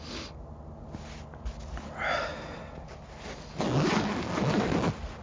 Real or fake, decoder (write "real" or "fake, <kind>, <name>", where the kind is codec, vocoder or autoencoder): real